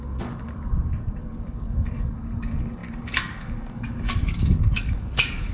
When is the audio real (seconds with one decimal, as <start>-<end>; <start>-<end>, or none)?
none